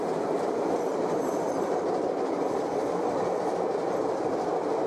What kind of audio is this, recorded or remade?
recorded